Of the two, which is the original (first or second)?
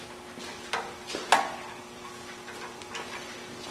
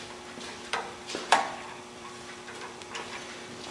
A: first